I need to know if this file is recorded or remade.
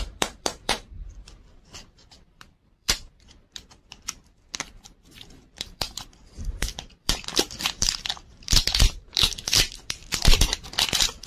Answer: remade